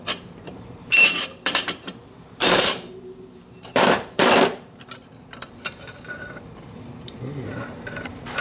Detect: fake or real fake